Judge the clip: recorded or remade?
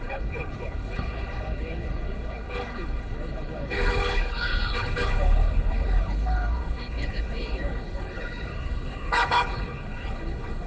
remade